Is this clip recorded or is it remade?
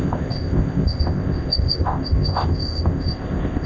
remade